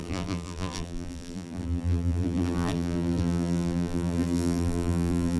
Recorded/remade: remade